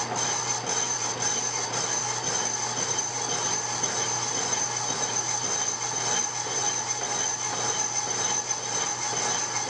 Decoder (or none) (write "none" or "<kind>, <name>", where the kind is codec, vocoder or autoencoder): none